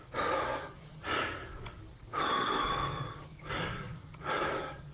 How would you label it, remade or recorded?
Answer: remade